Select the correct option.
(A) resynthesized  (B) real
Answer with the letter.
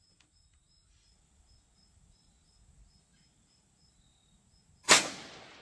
B